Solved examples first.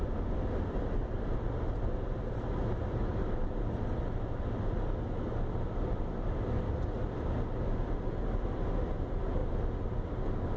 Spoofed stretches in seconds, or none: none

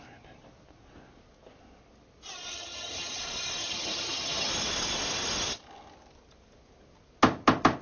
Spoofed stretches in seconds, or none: 2.5-3.2; 3.6-4.5

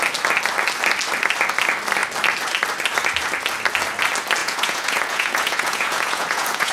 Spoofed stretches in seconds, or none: 4.4-6.7

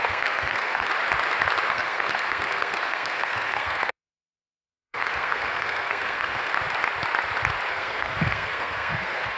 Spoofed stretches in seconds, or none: 0.0-0.9; 1.7-6.5; 7.7-9.4

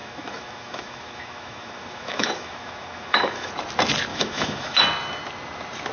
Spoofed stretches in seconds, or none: 0.0-3.5; 4.1-4.8

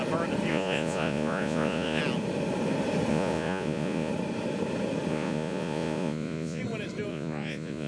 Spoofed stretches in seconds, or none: 0.5-2.0; 3.1-4.1; 5.1-6.6; 7.1-7.9